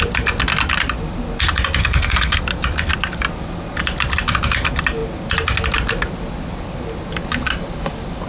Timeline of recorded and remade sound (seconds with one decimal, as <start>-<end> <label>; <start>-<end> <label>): 0.0-1.8 recorded; 1.8-2.4 remade; 2.4-8.3 recorded